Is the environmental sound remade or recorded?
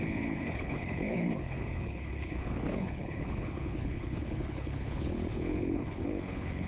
remade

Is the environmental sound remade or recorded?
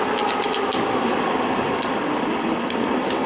recorded